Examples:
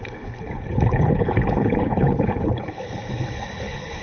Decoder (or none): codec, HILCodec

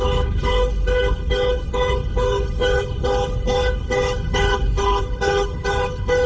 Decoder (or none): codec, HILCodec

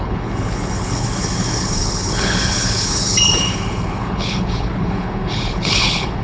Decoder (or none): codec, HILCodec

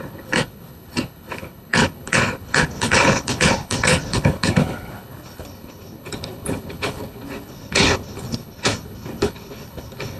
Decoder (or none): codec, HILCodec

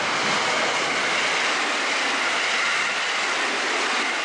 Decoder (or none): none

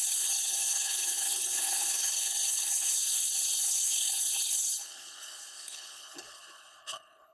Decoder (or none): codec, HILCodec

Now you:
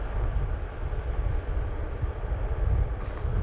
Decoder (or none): none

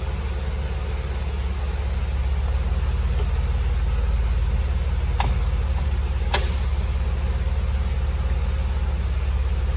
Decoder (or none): none